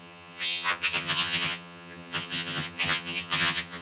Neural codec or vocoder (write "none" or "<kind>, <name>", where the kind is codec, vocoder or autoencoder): vocoder, HiFi-GAN